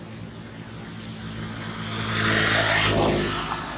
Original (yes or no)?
yes